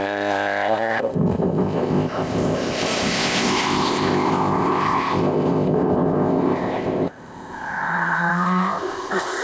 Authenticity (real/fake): fake